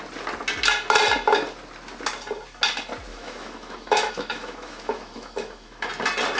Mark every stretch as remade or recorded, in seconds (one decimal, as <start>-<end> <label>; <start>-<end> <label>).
0.0-3.1 recorded; 3.1-5.9 remade; 5.9-6.4 recorded